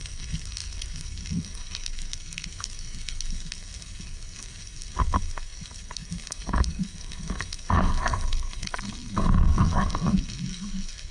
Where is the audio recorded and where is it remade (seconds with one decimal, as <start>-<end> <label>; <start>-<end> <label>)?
0.0-11.1 remade

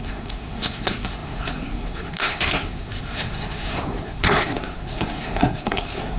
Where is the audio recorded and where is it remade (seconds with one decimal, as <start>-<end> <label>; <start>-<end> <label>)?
0.0-6.2 remade

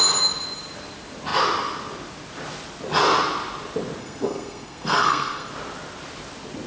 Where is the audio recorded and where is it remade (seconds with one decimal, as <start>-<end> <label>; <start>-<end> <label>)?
0.0-4.0 recorded; 4.0-5.5 remade; 5.5-6.7 recorded

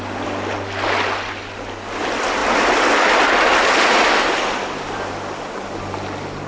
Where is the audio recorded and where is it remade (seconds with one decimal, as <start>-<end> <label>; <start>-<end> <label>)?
0.0-6.5 recorded

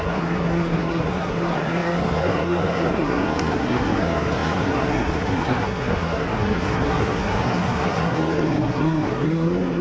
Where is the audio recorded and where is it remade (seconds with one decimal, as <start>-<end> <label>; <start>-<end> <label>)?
0.0-9.8 remade

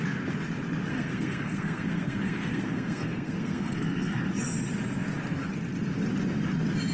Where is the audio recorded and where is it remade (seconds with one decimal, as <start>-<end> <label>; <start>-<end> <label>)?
0.0-0.9 recorded; 0.9-4.2 remade; 4.2-6.9 recorded

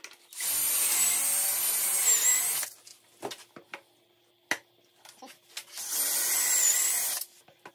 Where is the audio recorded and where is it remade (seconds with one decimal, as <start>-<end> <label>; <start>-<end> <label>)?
0.0-7.7 recorded